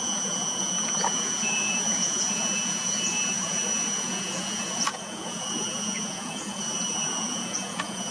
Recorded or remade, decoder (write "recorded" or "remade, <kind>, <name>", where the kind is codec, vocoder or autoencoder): remade, vocoder, Vocos